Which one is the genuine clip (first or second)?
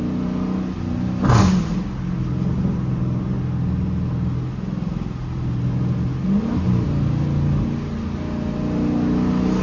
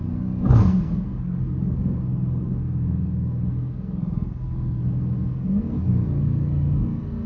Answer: first